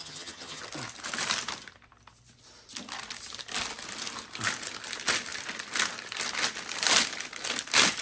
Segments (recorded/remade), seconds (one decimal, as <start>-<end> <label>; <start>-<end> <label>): 0.0-0.6 remade; 0.6-8.0 recorded